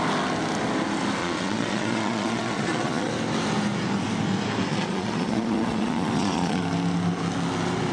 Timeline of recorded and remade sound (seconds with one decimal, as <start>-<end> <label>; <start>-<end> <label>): 0.0-1.2 recorded; 1.2-3.1 remade; 3.1-4.7 recorded; 4.7-6.6 remade; 6.6-7.9 recorded